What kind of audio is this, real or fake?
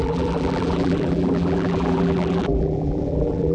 fake